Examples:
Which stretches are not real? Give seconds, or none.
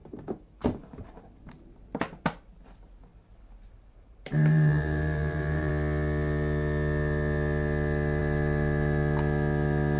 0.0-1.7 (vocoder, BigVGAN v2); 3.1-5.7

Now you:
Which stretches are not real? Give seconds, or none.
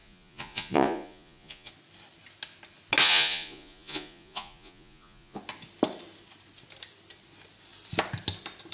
0.0-1.7 (vocoder, Vocos); 3.0-5.4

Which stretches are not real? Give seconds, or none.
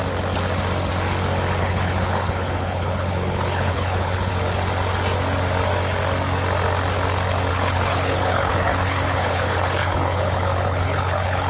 1.6-4.3 (codec, HILCodec); 7.5-11.5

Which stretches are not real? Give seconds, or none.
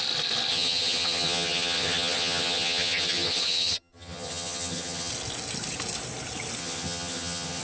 0.5-5.1 (vocoder, HiFi-GAN); 6.6-7.6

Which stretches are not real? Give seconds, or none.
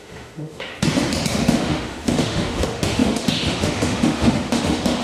0.0-0.7 (autoencoder, DAC-VAE); 1.3-5.0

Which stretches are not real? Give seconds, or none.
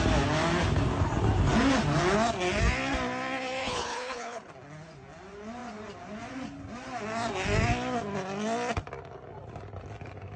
3.6-4.5 (codec, HILCodec)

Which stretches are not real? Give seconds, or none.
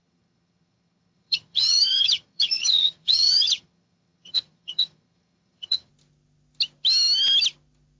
0.0-5.9 (vocoder, HiFi-GAN)